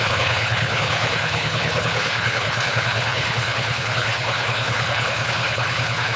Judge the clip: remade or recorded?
remade